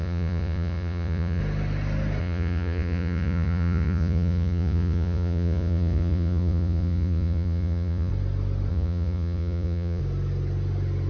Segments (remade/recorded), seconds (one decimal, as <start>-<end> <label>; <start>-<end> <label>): 0.0-1.4 remade; 1.4-2.2 recorded; 2.2-8.1 remade; 8.1-8.7 recorded; 8.7-10.0 remade; 10.0-11.1 recorded